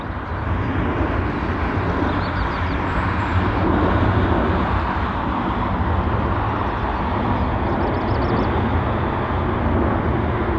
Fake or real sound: real